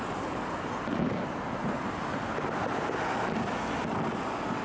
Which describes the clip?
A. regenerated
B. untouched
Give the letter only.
B